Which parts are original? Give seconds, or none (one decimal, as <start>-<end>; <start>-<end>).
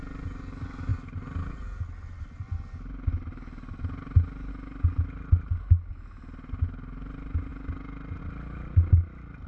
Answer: 0.0-9.5